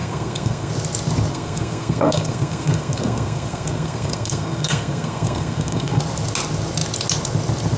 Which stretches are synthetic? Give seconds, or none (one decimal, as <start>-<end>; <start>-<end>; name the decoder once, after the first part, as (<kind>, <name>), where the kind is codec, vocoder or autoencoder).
0.0-0.7 (codec, SNAC); 1.3-6.0